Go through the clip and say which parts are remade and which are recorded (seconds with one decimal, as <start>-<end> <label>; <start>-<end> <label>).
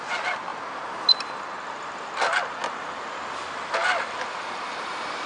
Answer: 0.0-0.5 remade; 0.5-1.1 recorded; 1.1-3.8 remade; 3.8-5.3 recorded